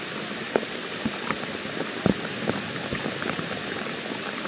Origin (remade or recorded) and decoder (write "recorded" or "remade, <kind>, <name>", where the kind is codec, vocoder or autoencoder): remade, vocoder, BigVGAN v2